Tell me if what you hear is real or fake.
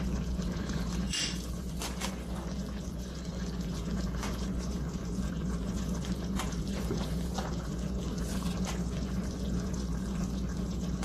fake